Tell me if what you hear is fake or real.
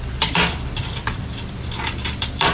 fake